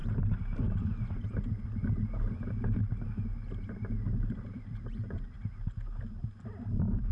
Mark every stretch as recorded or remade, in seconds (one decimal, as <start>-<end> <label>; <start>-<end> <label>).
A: 0.0-4.3 recorded; 4.3-7.1 remade